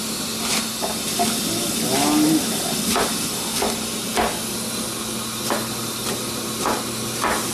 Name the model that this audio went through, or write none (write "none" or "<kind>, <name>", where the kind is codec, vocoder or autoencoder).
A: none